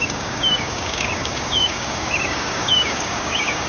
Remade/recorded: remade